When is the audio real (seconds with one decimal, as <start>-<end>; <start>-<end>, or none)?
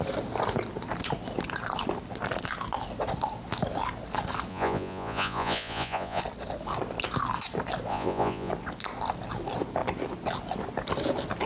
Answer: 0.0-4.5; 6.2-7.9; 8.5-11.5